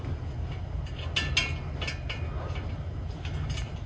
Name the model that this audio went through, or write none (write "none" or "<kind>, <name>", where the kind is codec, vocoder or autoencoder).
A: none